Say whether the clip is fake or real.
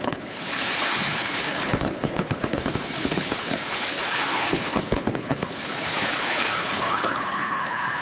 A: fake